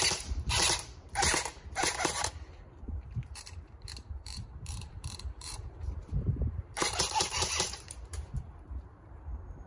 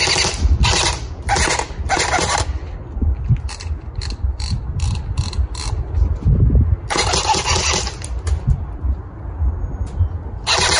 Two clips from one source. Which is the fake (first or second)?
first